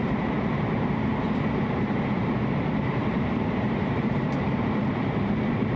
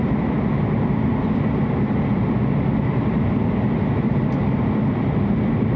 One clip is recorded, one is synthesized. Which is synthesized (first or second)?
first